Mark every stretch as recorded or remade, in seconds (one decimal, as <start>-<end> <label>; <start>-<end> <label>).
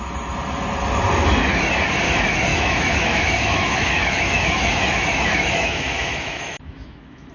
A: 0.0-2.5 recorded; 2.5-7.3 remade